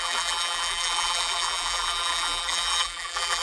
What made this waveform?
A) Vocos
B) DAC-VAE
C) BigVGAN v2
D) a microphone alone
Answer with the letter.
C